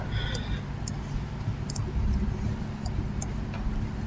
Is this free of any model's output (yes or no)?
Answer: yes